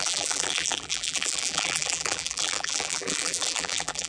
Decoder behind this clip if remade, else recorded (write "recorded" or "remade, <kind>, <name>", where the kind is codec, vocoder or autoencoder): remade, vocoder, BigVGAN v2